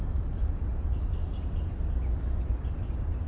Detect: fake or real real